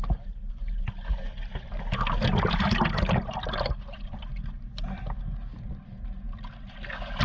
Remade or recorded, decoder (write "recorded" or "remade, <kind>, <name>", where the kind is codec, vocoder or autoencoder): recorded